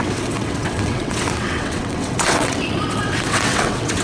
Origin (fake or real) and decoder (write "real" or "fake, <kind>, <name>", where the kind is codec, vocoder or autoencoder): fake, vocoder, WaveNeXt